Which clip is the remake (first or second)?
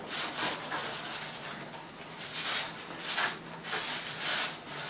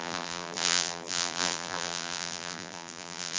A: second